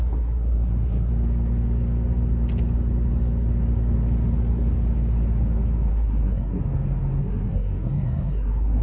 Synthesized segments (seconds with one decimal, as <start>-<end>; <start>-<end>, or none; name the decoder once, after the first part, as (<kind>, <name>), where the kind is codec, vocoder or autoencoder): 0.0-1.1 (codec, SNAC); 5.9-6.6; 7.2-8.8